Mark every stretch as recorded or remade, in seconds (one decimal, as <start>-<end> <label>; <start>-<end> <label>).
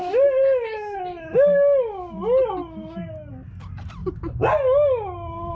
0.0-5.5 recorded